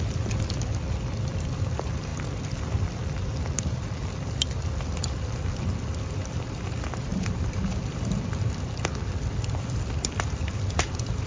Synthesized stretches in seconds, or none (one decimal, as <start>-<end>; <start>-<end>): 0.0-11.3